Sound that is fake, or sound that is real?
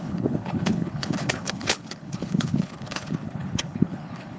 fake